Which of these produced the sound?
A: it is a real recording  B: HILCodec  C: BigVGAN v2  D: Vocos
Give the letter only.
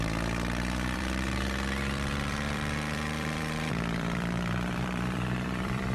C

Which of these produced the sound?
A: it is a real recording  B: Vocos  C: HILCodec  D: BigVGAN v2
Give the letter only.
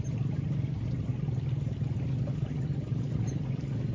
A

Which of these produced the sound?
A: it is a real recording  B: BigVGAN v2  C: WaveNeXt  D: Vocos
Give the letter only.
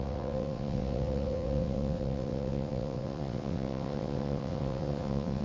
C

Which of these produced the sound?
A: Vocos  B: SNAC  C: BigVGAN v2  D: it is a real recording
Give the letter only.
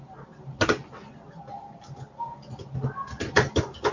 D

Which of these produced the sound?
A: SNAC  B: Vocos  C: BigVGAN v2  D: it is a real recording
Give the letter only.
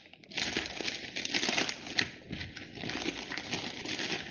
D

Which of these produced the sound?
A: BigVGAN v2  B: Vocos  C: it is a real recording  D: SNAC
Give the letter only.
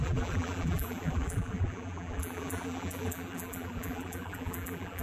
A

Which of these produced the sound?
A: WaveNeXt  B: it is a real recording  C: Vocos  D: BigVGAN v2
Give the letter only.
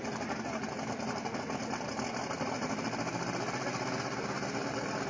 B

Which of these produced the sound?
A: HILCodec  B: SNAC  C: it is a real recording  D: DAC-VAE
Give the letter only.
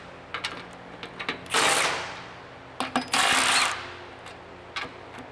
C